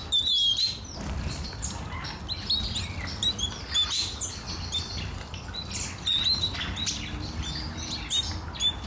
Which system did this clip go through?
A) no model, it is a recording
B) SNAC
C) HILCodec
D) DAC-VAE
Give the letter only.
A